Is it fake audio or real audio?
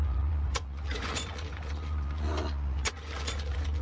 fake